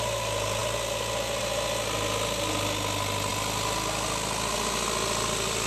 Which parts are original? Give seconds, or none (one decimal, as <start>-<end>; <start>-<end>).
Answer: 0.0-5.7